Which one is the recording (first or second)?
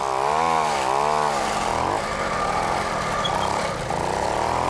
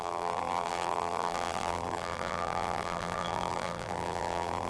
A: first